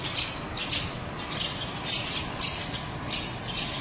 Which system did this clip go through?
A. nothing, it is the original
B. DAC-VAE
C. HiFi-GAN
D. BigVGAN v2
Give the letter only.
A